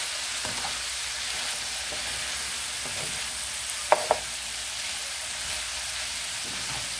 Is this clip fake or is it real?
real